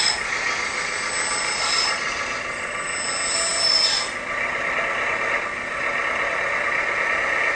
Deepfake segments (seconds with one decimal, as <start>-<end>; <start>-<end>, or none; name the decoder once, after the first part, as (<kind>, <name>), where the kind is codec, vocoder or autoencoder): none